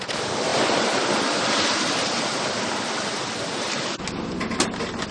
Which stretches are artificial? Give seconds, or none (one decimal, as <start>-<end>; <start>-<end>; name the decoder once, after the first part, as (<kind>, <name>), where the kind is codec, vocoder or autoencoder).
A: none